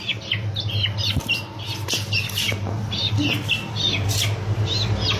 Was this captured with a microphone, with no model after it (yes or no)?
yes